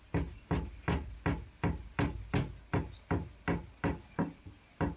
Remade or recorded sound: recorded